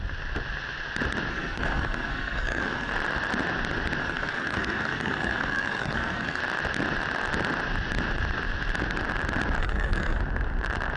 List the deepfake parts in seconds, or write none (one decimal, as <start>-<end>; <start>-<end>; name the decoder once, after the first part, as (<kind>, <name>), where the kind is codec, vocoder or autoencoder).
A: 1.3-2.9 (codec, SNAC); 4.0-6.4; 9.6-10.2